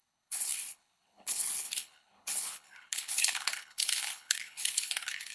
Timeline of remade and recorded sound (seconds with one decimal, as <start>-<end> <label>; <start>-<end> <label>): 0.0-5.3 remade